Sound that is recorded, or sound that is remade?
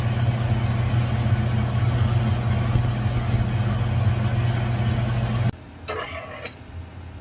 recorded